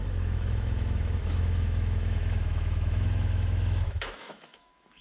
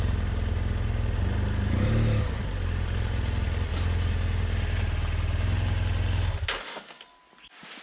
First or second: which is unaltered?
second